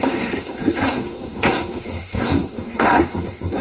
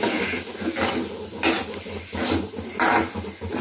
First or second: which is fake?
first